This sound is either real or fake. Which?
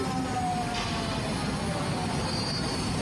real